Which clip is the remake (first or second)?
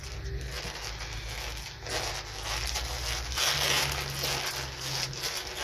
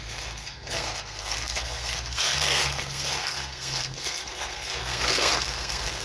second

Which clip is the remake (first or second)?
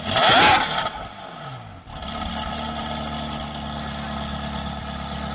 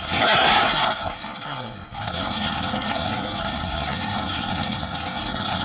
second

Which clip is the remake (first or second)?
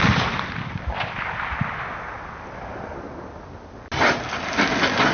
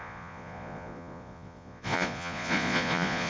second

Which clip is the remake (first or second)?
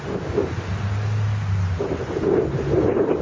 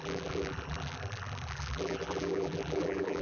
second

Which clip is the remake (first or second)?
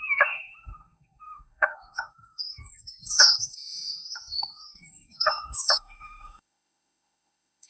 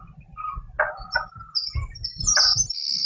first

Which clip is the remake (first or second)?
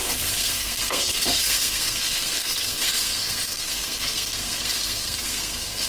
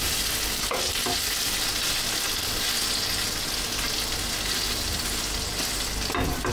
first